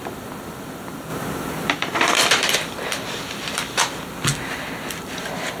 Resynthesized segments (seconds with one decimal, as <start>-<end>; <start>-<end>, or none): 0.0-1.1; 1.7-5.6